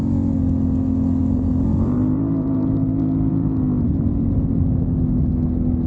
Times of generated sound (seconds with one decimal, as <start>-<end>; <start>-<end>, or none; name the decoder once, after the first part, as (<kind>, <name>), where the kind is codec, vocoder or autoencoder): 1.2-4.7 (vocoder, BigVGAN v2)